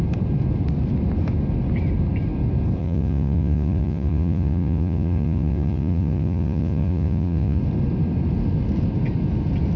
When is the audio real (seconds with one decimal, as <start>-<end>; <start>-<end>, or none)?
0.0-2.8; 7.6-9.8